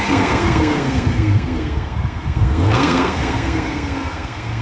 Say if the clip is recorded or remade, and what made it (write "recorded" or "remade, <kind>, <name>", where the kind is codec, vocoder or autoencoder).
remade, codec, SNAC